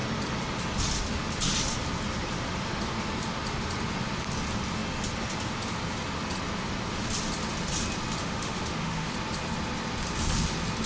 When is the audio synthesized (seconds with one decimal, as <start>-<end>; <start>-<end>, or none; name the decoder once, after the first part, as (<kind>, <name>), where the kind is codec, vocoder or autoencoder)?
8.2-9.1 (autoencoder, DAC-VAE)